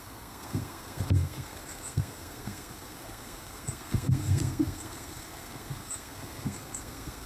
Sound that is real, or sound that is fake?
fake